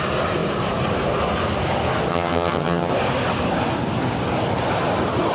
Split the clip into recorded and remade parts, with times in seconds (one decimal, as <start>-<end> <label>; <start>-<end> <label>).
0.0-2.1 recorded; 2.1-2.9 remade; 2.9-5.3 recorded